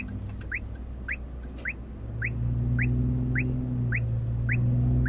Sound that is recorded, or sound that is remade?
recorded